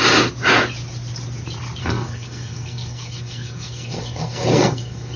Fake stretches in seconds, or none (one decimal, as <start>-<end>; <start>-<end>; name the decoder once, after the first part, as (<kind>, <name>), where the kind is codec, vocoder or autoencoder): 1.8-5.2 (codec, SNAC)